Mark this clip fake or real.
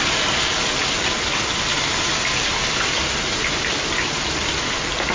real